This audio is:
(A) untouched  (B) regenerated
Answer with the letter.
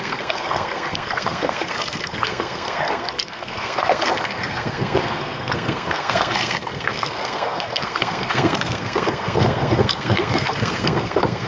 B